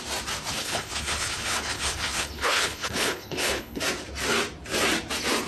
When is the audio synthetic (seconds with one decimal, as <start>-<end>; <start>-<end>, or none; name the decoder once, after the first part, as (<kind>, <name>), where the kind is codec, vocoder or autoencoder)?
0.5-3.8 (codec, HILCodec)